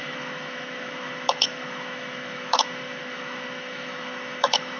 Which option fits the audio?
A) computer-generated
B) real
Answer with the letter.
A